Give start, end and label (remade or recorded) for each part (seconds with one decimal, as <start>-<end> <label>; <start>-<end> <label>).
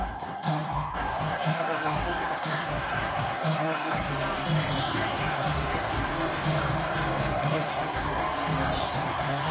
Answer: 0.0-4.1 remade; 4.1-4.8 recorded; 4.8-6.1 remade; 6.1-7.3 recorded; 7.3-8.2 remade; 8.2-8.8 recorded; 8.8-9.5 remade